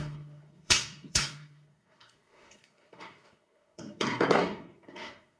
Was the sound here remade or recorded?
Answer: remade